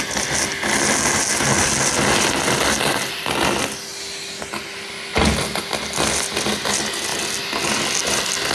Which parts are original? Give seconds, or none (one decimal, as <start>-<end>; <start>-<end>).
0.0-8.5